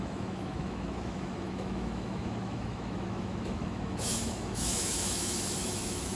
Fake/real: fake